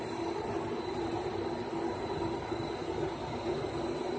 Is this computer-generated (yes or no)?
no